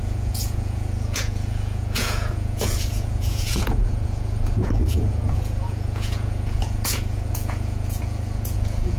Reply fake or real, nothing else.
fake